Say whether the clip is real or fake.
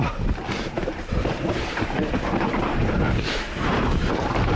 fake